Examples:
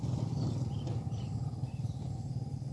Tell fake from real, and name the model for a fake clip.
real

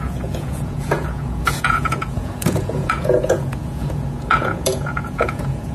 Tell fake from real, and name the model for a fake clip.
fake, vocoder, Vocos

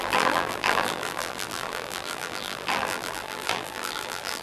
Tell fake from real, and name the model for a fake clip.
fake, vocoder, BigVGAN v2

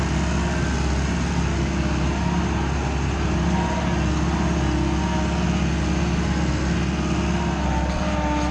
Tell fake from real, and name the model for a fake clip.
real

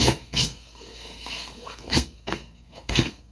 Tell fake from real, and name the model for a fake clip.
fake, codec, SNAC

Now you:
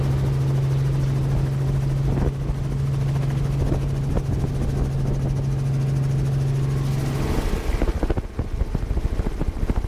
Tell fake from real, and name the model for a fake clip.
real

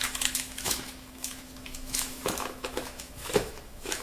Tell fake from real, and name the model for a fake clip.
fake, autoencoder, DAC-VAE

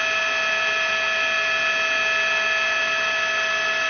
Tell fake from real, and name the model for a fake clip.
real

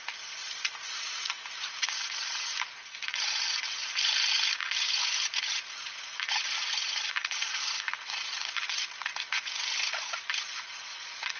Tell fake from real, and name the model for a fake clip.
fake, vocoder, Vocos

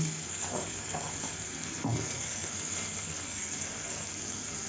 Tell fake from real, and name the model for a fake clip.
fake, codec, SNAC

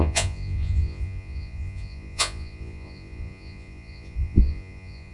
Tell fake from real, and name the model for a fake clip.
fake, vocoder, Vocos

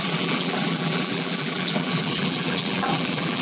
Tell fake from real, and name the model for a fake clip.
fake, vocoder, BigVGAN v2